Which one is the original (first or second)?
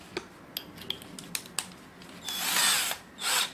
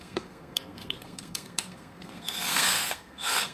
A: first